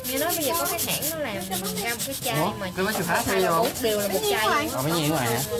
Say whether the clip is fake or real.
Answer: real